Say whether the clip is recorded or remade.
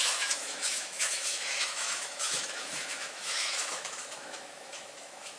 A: remade